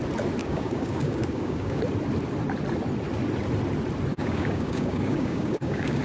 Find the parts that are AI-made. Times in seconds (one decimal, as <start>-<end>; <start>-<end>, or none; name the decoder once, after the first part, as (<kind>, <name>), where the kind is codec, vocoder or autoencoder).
0.4-1.8 (codec, DAC); 4.1-6.0